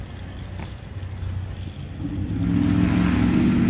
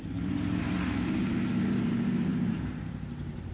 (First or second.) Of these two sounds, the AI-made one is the second